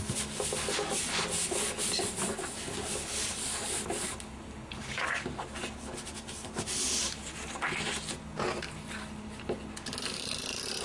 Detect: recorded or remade recorded